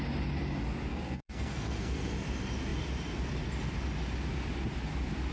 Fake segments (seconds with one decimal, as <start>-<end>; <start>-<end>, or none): 0.9-2.1